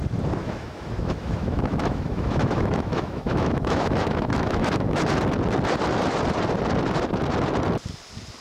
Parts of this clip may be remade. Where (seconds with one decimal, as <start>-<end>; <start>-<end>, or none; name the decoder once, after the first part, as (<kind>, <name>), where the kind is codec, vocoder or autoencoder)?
0.4-5.0 (autoencoder, DAC-VAE)